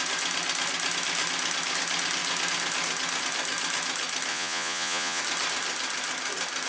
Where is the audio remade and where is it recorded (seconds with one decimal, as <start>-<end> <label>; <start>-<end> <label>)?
0.0-4.3 recorded; 4.3-5.2 remade; 5.2-6.7 recorded